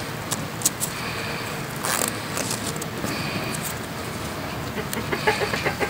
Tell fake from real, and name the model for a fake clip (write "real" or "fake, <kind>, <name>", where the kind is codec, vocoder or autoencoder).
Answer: real